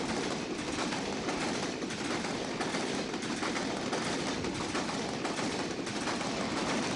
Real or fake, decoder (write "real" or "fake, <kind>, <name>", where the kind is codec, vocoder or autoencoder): real